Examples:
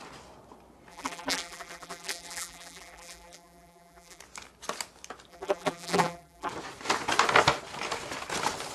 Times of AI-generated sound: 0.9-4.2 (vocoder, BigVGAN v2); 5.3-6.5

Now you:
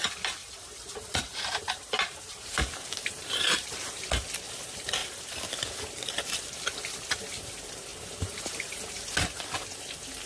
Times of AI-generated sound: 0.4-4.1 (vocoder, BigVGAN v2); 5.0-5.5; 7.9-8.8

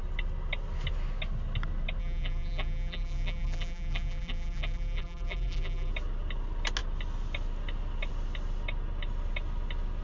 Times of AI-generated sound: 2.0-5.9 (vocoder, BigVGAN v2)

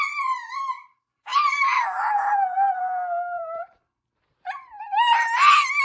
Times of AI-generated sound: 0.0-5.8 (vocoder, BigVGAN v2)

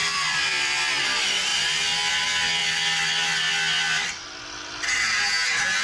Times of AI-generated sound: 0.0-1.0 (vocoder, BigVGAN v2)

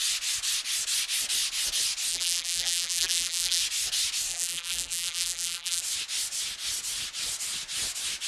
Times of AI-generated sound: 2.1-3.6 (vocoder, BigVGAN v2); 4.3-5.8